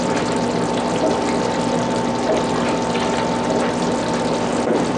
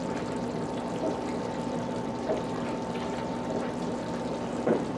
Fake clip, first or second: second